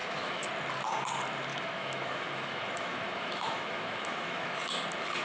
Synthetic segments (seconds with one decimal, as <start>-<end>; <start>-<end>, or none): 0.0-0.5; 1.5-4.6